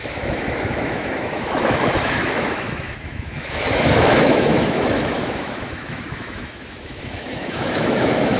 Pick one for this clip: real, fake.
fake